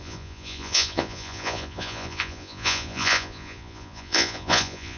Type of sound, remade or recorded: remade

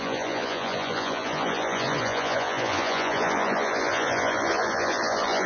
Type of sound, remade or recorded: remade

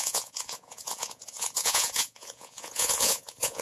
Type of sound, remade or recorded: remade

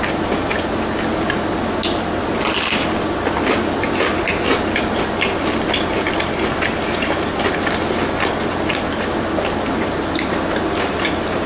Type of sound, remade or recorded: recorded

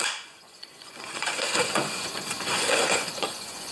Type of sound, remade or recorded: remade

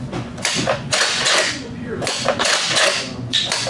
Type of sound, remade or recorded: remade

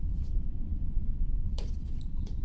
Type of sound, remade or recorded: remade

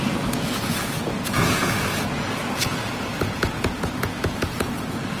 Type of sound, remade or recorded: remade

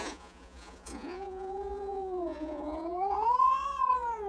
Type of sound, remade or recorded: remade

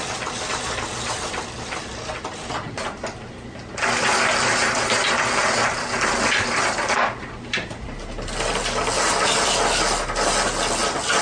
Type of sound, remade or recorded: recorded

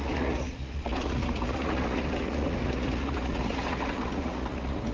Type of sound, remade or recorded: remade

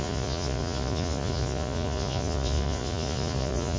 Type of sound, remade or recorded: remade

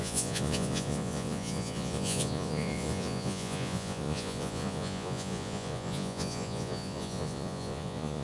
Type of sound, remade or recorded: remade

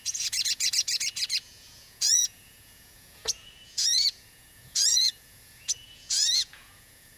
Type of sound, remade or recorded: remade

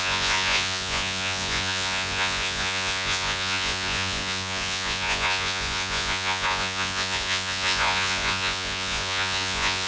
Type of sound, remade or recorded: remade